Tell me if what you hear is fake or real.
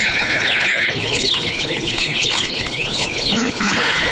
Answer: fake